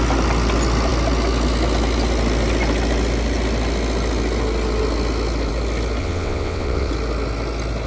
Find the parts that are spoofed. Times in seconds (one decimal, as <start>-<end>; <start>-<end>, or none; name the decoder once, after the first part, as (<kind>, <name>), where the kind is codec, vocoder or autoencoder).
6.0-6.9 (vocoder, WaveNeXt)